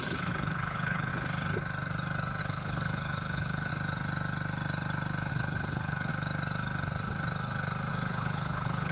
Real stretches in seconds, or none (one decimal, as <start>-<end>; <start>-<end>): 1.1-2.4; 3.7-5.3; 6.1-7.9